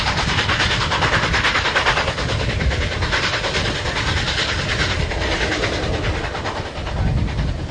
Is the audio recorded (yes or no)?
yes